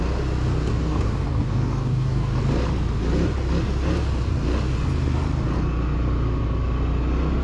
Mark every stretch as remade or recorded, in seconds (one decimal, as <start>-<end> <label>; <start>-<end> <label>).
0.0-0.7 recorded; 0.7-2.4 remade; 2.4-7.4 recorded